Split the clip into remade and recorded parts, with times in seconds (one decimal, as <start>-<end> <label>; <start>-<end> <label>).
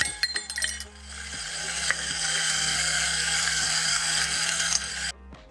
0.0-1.6 recorded; 1.6-4.9 remade; 4.9-5.5 recorded